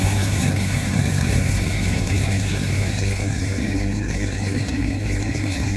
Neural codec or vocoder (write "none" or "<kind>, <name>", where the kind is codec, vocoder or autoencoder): codec, SNAC